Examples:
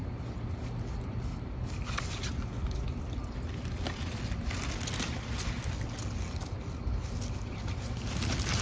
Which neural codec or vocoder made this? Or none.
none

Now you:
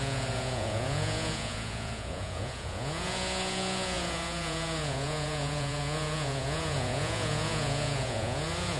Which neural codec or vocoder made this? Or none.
vocoder, Vocos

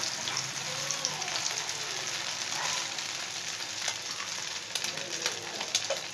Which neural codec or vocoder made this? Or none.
none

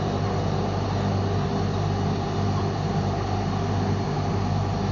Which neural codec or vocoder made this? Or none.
none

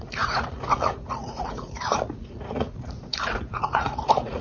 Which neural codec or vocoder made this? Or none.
vocoder, Vocos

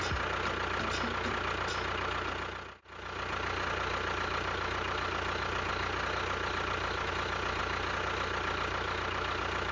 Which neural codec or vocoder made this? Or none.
none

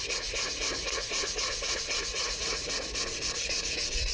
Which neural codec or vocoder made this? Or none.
vocoder, Vocos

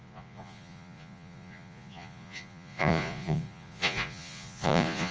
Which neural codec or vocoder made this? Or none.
vocoder, Vocos